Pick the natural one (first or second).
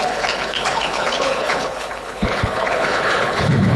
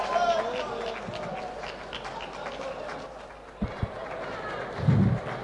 second